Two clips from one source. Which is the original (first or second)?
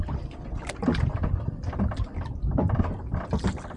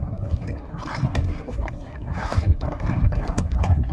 first